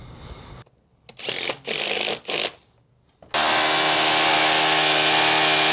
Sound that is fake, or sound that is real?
real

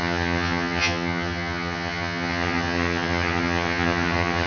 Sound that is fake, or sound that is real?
fake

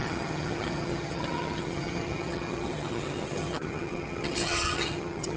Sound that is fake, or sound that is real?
fake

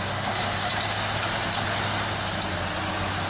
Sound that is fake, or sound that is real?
real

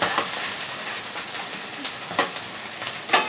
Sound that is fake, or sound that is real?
real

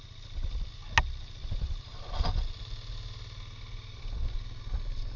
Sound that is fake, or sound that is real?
real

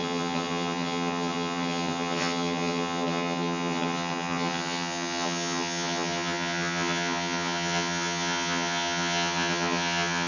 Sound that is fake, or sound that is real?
fake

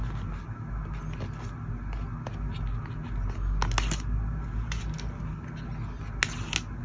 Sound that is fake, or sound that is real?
real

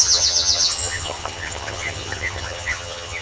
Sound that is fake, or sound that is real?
fake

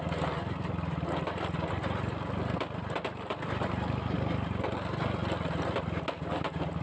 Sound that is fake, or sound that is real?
real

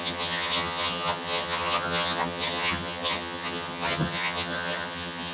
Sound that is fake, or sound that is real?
fake